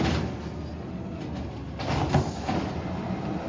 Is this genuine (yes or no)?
yes